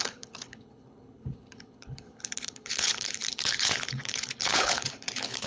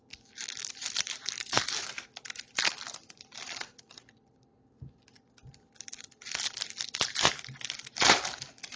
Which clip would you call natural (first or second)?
second